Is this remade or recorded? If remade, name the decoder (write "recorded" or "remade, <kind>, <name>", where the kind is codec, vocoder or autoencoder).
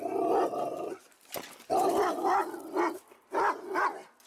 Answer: recorded